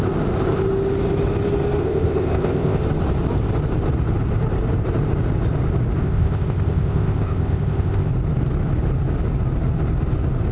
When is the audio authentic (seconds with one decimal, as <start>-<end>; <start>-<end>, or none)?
0.0-1.8; 2.8-6.0; 8.1-10.5